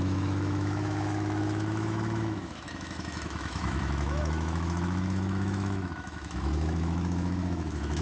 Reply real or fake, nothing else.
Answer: fake